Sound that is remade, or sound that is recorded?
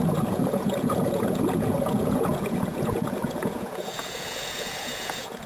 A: remade